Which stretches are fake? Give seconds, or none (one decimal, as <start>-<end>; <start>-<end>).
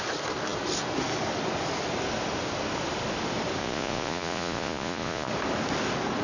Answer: 3.6-5.3